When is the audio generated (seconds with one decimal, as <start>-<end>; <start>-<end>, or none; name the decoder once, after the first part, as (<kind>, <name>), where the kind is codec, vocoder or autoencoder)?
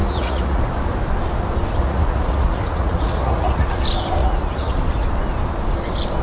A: 0.0-0.6 (vocoder, Vocos); 1.8-3.8; 4.2-4.8